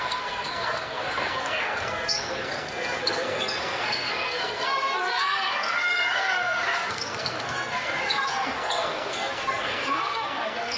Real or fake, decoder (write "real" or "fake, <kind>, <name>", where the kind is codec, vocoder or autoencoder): fake, codec, SNAC